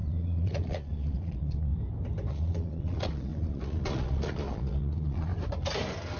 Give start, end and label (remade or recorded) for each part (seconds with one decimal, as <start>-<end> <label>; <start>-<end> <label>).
0.0-1.7 remade; 1.7-2.3 recorded; 2.3-5.3 remade; 5.3-6.2 recorded